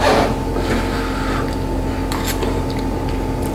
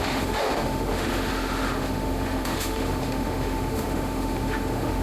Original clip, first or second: first